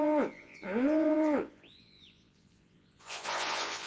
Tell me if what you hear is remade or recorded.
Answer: remade